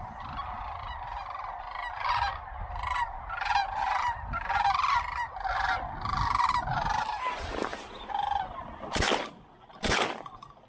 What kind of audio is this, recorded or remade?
recorded